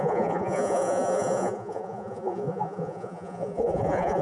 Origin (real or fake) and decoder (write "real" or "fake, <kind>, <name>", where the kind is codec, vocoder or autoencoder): fake, vocoder, Vocos